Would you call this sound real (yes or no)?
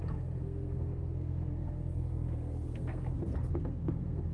no